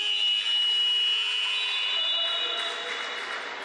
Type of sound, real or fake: real